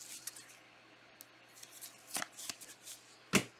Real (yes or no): yes